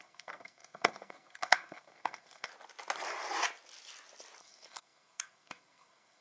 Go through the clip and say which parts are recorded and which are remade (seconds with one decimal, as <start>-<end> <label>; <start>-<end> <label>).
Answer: 0.0-2.5 remade; 2.5-4.4 recorded; 4.4-6.2 remade